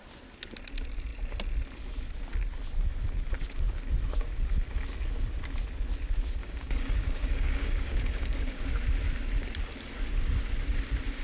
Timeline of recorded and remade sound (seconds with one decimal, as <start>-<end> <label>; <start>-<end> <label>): 0.0-6.4 recorded; 6.4-8.6 remade; 8.6-11.2 recorded